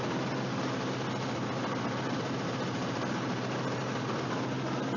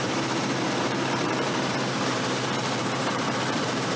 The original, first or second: first